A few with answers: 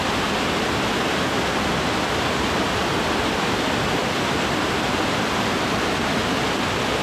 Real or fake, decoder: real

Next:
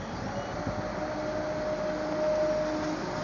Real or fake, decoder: real